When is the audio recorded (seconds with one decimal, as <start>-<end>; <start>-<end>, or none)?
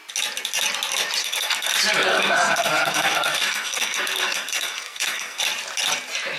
0.0-1.2; 1.7-2.1; 5.4-6.4